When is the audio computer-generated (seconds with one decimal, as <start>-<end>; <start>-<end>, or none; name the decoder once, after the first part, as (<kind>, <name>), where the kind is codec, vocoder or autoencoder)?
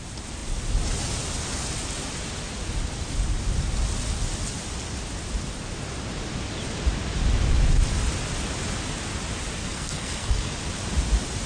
9.6-10.5 (codec, SNAC)